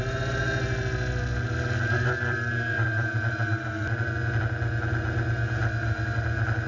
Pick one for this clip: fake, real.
real